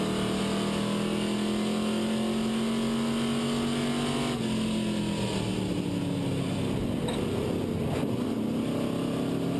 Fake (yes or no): no